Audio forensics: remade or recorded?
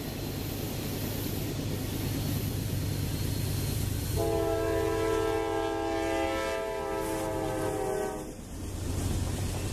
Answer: recorded